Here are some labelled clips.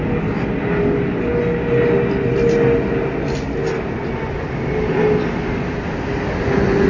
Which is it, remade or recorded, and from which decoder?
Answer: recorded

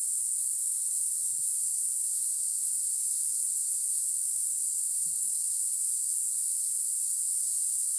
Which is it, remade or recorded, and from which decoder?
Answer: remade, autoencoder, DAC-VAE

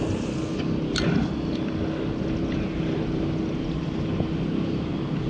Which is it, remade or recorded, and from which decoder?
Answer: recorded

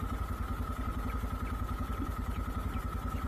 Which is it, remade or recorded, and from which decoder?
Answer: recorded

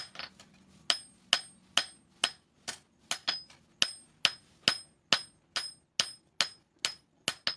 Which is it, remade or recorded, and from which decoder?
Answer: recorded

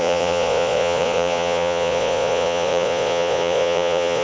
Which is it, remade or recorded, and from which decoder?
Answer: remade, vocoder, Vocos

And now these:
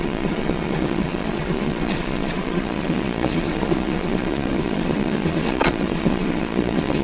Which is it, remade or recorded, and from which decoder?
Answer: remade, vocoder, Vocos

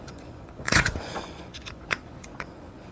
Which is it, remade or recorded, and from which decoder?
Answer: remade, vocoder, Vocos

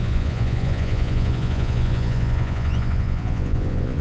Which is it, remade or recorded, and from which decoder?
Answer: remade, vocoder, Vocos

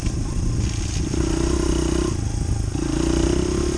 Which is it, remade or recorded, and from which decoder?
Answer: recorded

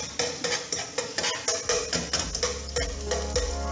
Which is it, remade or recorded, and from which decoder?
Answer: recorded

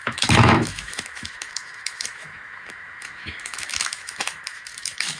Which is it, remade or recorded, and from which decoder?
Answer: remade, autoencoder, DAC-VAE